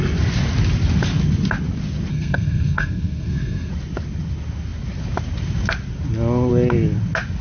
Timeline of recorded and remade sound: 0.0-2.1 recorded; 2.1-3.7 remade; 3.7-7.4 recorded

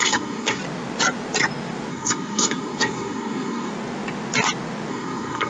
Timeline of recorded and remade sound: 0.0-0.6 remade; 0.6-1.9 recorded; 1.9-3.7 remade; 3.7-4.9 recorded; 4.9-5.5 remade

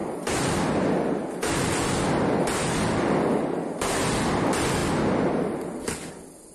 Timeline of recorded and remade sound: 0.0-6.5 recorded